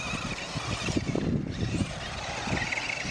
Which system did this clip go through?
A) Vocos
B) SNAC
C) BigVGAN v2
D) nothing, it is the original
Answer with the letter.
D